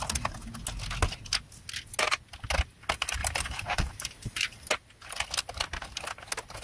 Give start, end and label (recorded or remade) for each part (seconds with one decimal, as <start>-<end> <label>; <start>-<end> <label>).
0.0-3.2 recorded; 3.2-4.7 remade; 4.7-6.6 recorded